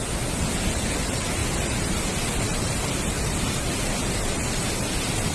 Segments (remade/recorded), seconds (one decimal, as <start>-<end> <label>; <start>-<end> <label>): 0.0-5.3 recorded

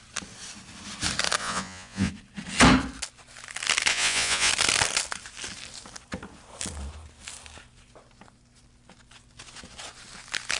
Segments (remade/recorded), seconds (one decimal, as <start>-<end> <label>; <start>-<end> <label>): 0.0-1.4 recorded; 1.4-2.1 remade; 2.1-3.9 recorded; 3.9-4.5 remade; 4.5-10.6 recorded